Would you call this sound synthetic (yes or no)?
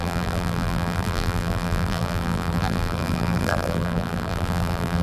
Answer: yes